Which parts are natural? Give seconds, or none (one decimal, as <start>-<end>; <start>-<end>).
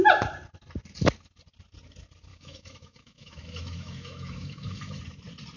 0.0-2.3; 5.0-5.6